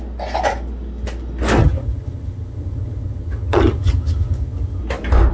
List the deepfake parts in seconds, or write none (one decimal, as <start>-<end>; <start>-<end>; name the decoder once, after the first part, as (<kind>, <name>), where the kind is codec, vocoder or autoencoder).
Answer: 1.6-4.8 (vocoder, HiFi-GAN)